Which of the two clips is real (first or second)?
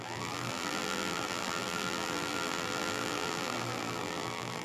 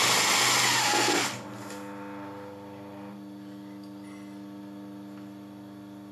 second